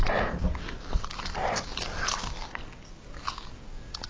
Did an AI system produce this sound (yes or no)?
no